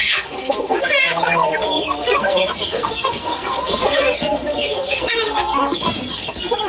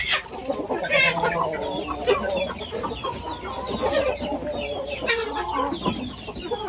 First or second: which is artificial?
first